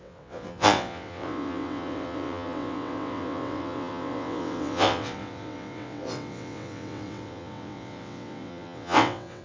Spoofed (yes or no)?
yes